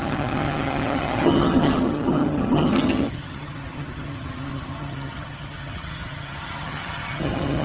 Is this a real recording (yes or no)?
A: no